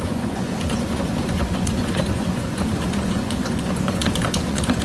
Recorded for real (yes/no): no